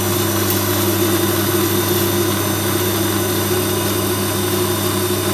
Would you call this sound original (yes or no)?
yes